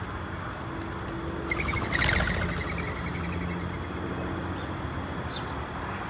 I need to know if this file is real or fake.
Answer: real